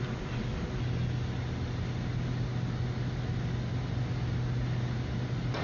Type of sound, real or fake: real